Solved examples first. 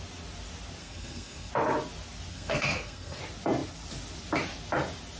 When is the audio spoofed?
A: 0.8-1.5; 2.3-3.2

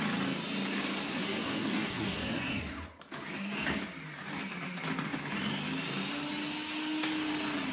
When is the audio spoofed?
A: 1.1-2.7

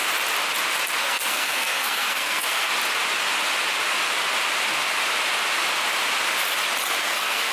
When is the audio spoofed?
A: 1.0-2.7; 7.0-7.5

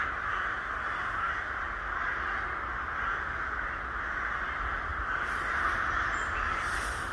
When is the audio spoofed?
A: none

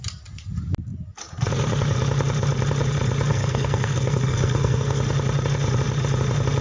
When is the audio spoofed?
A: 3.3-5.0